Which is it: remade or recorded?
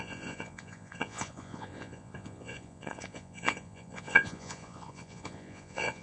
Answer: remade